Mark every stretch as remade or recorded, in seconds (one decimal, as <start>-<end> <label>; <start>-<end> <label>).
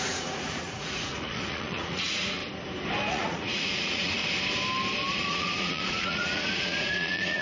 0.0-2.4 remade; 2.4-3.1 recorded; 3.1-4.2 remade; 4.2-5.1 recorded; 5.1-7.4 remade